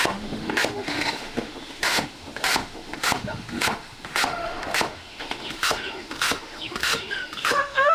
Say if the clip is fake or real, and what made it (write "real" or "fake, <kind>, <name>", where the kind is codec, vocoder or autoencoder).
fake, autoencoder, DAC-VAE